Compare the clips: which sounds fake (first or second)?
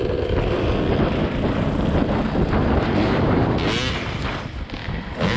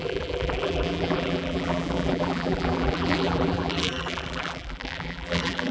second